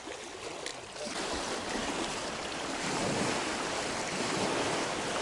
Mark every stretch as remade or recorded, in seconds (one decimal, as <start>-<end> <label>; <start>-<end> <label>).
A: 0.0-5.2 recorded